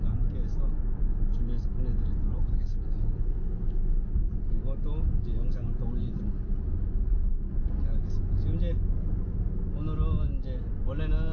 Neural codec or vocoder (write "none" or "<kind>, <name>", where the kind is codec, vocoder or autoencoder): none